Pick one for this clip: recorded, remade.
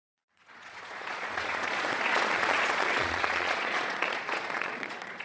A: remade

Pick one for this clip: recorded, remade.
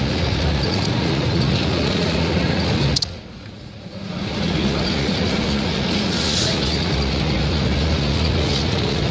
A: remade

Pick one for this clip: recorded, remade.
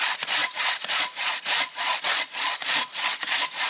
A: remade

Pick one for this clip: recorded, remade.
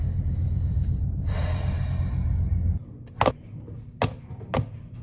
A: recorded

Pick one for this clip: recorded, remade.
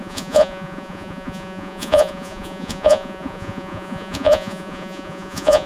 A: remade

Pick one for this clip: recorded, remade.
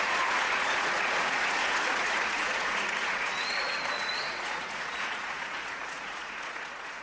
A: remade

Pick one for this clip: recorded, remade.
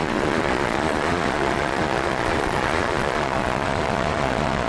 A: remade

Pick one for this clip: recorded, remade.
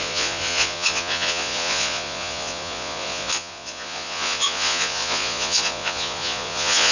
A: remade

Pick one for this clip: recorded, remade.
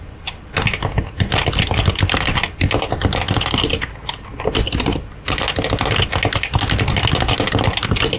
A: recorded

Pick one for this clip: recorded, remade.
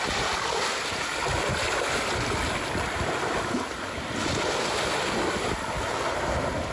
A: recorded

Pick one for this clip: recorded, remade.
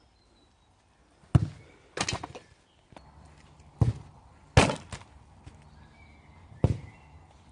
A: recorded